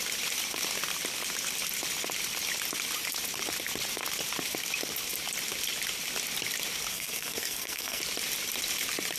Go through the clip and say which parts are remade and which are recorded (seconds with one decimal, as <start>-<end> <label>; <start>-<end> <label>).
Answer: 0.0-6.9 recorded; 6.9-8.0 remade; 8.0-9.2 recorded